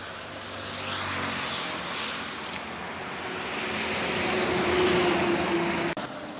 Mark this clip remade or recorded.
recorded